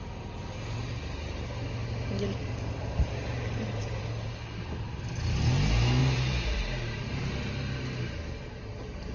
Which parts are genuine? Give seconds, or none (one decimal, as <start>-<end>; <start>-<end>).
0.0-2.4; 5.1-6.0; 7.2-9.1